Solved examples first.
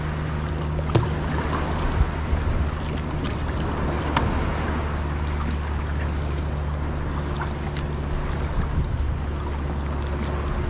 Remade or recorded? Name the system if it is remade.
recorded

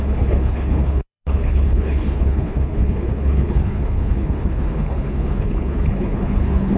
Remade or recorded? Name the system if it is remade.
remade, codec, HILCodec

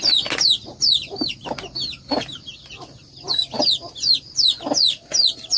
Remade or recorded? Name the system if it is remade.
recorded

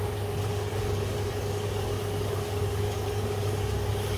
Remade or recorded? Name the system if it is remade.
remade, codec, DAC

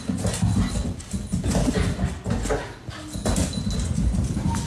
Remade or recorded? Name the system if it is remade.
recorded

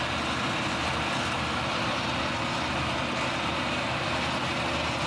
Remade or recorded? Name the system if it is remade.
recorded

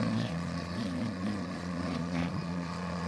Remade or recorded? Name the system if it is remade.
remade, vocoder, Vocos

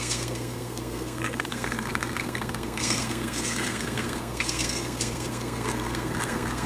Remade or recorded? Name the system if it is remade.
remade, codec, SNAC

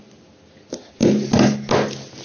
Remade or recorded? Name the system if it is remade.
recorded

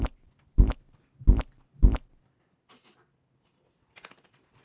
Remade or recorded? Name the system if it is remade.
recorded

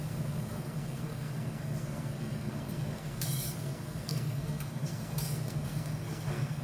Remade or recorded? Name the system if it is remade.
remade, codec, SNAC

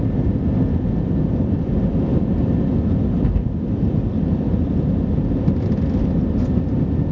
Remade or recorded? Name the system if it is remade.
recorded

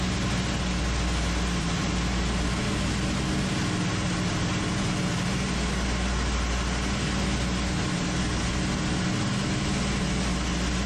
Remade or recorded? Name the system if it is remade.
recorded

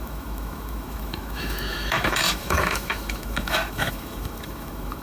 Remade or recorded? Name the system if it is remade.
remade, autoencoder, DAC-VAE